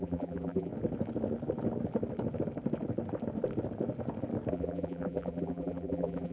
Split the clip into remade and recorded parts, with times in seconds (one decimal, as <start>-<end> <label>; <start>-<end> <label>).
0.0-0.7 remade; 0.7-4.5 recorded; 4.5-6.3 remade